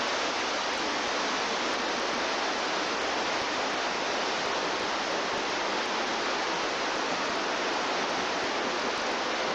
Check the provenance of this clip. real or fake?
real